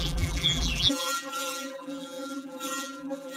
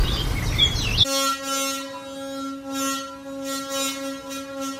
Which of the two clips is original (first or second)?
second